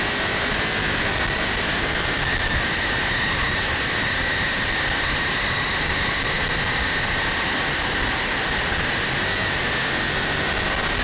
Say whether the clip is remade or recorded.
recorded